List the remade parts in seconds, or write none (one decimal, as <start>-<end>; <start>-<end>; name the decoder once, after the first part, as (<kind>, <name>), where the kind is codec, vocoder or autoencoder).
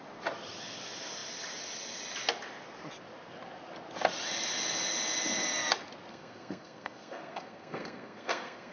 6.1-8.7 (codec, SNAC)